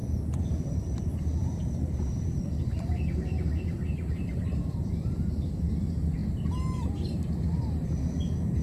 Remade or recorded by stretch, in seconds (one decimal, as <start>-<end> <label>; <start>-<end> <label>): 0.0-8.6 remade